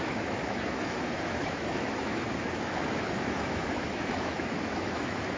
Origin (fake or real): fake